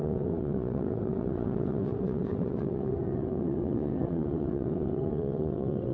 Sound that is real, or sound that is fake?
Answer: fake